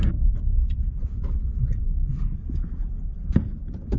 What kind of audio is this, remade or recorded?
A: recorded